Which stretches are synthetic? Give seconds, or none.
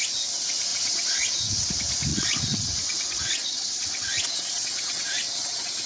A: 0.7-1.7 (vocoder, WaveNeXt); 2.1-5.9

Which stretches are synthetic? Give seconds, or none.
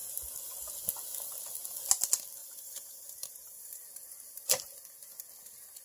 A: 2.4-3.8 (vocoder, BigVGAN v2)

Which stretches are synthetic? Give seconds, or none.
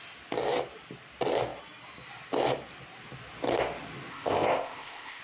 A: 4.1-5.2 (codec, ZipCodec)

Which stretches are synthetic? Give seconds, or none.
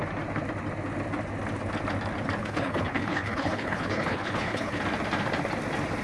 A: 2.4-4.8 (codec, HILCodec)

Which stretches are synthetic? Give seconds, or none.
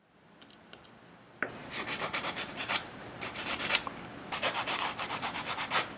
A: 1.6-3.7 (vocoder, BigVGAN v2)